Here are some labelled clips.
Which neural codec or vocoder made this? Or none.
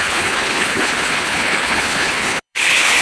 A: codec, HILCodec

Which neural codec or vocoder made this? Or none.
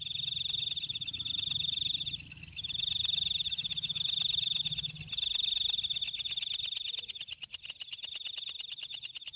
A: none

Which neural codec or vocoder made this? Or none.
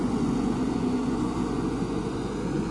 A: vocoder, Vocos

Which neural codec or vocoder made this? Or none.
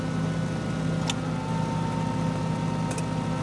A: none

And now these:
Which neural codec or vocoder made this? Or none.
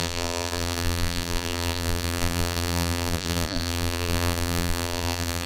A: vocoder, BigVGAN v2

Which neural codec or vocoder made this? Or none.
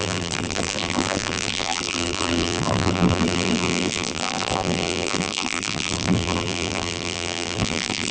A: vocoder, BigVGAN v2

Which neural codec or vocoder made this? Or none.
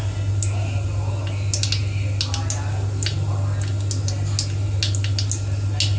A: none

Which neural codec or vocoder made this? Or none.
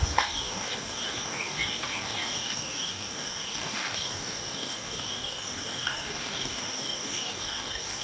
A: codec, DAC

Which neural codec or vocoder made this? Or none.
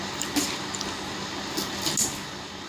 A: none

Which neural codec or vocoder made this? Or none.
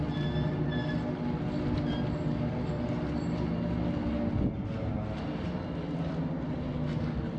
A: none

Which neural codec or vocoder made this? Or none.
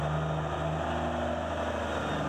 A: none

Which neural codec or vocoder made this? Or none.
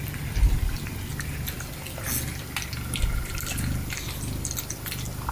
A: none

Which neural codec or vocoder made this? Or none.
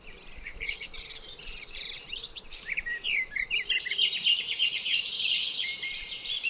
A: vocoder, BigVGAN v2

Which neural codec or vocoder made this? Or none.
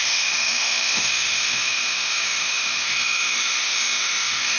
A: autoencoder, DAC-VAE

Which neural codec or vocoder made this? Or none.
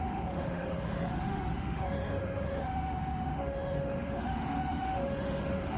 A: autoencoder, DAC-VAE